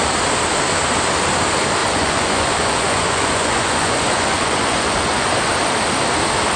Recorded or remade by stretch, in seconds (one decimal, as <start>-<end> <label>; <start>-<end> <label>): 0.0-1.8 recorded; 1.8-5.3 remade; 5.3-6.6 recorded